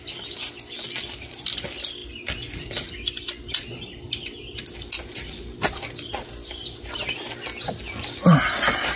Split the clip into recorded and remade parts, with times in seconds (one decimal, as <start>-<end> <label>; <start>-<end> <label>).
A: 0.0-9.0 recorded